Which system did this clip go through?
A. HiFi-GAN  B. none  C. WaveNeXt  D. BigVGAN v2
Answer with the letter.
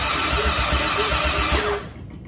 B